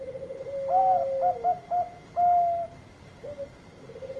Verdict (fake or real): real